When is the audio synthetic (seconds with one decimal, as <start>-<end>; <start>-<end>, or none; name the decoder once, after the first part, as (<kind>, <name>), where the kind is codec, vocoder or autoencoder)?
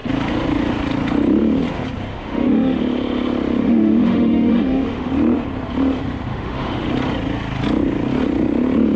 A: 2.1-2.8 (autoencoder, DAC-VAE); 3.6-5.1; 6.3-6.9